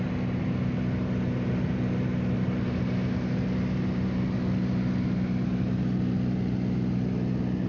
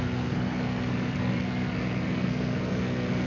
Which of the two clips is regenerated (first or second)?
second